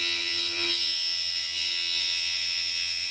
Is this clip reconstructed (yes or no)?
yes